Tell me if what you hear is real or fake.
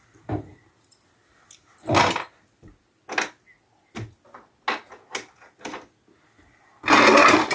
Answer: real